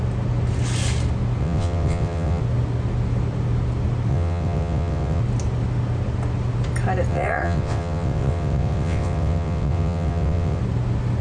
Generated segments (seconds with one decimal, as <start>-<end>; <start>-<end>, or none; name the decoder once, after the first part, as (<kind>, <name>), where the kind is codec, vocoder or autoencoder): 1.4-2.4 (vocoder, WaveNeXt); 4.1-5.2; 7.1-10.6